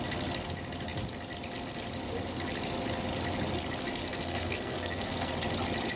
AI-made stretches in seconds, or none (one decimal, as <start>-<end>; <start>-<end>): 4.0-5.3